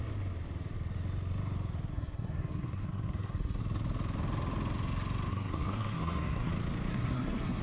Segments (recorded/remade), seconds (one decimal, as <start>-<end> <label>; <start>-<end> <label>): 0.0-1.9 recorded; 1.9-3.6 remade; 3.6-5.3 recorded; 5.3-6.5 remade; 6.5-6.9 recorded; 6.9-7.6 remade

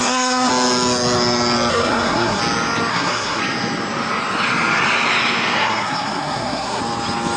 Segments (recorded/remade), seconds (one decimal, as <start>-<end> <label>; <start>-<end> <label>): 0.0-0.5 remade; 0.5-1.7 recorded; 1.7-2.4 remade; 2.4-2.9 recorded; 2.9-3.4 remade; 3.4-5.6 recorded; 5.6-6.8 remade; 6.8-7.4 recorded

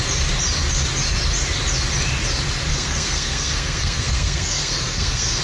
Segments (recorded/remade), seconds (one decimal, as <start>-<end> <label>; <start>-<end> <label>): 0.0-2.7 recorded; 2.7-5.4 remade

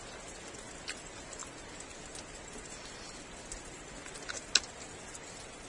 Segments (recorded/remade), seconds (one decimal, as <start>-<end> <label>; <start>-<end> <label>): 0.0-5.7 recorded

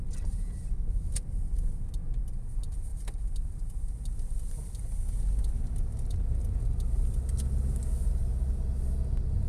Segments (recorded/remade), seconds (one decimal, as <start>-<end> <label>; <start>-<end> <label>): 0.0-9.5 recorded

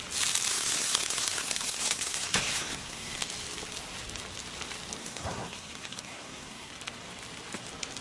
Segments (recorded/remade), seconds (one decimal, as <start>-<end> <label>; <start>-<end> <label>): 0.0-0.5 recorded; 0.5-3.2 remade; 3.2-5.0 recorded; 5.0-6.7 remade; 6.7-8.0 recorded

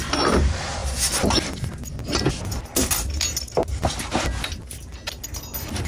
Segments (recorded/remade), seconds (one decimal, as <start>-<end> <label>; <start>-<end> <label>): 0.0-5.9 recorded

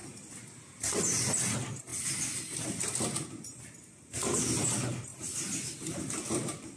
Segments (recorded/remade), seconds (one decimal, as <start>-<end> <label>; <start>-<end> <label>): 0.0-6.8 recorded